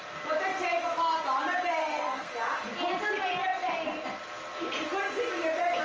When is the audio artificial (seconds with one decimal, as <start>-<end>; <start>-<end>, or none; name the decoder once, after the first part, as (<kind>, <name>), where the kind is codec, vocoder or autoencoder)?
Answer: 1.8-2.3 (codec, SNAC)